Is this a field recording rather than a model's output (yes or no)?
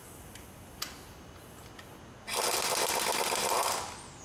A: yes